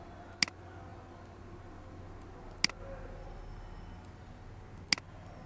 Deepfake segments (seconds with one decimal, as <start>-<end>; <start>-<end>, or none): none